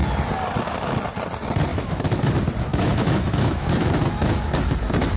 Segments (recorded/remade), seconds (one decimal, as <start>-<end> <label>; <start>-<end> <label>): 0.0-1.7 recorded; 1.7-2.3 remade; 2.3-2.7 recorded; 2.7-4.0 remade; 4.0-5.2 recorded